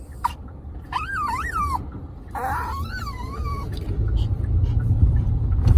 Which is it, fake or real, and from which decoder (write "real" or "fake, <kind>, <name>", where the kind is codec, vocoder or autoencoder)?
fake, vocoder, BigVGAN v2